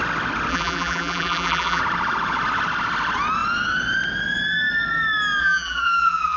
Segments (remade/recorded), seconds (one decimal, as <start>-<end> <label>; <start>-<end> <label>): 0.0-0.5 recorded; 0.5-1.8 remade; 1.8-5.4 recorded; 5.4-6.4 remade

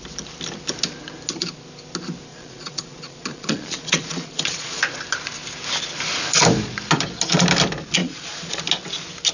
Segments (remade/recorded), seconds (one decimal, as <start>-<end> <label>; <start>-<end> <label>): 0.0-2.3 recorded; 2.3-4.8 remade; 4.8-8.0 recorded; 8.0-8.6 remade; 8.6-9.3 recorded

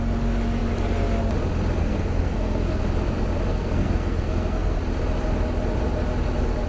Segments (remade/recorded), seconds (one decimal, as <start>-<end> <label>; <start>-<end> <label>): 0.0-1.8 recorded; 1.8-2.8 remade; 2.8-3.5 recorded; 3.5-4.8 remade; 4.8-6.7 recorded

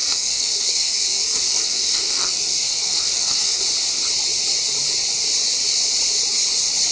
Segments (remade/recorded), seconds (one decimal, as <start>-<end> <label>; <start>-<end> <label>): 0.0-3.6 remade; 3.6-6.9 recorded